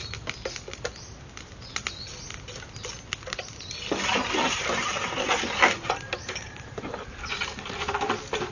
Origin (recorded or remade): recorded